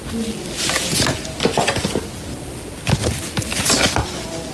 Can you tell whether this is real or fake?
real